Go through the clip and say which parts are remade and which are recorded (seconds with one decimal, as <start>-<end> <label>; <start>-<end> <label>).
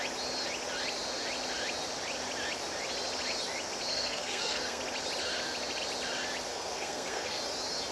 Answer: 0.0-3.9 recorded; 3.9-4.8 remade; 4.8-6.5 recorded; 6.5-7.4 remade; 7.4-7.9 recorded